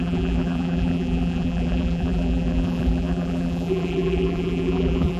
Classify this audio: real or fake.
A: fake